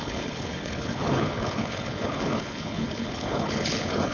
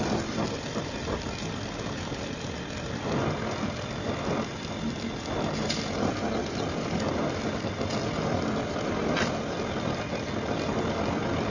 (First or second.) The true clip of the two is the second